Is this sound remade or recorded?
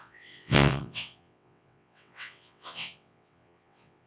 remade